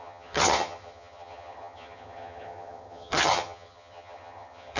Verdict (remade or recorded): remade